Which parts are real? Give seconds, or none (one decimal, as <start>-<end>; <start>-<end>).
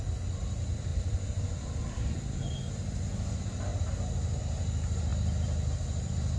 0.0-6.4